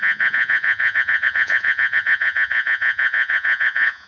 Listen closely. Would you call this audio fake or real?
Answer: fake